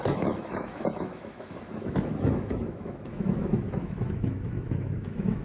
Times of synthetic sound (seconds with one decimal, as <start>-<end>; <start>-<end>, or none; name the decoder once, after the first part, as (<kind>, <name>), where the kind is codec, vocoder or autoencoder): 0.0-5.4 (autoencoder, DAC-VAE)